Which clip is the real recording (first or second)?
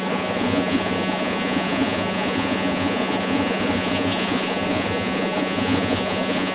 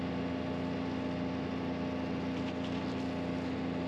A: second